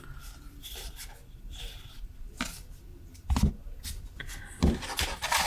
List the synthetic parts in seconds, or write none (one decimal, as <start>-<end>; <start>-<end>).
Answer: none